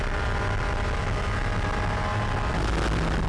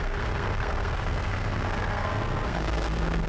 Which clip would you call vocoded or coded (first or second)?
second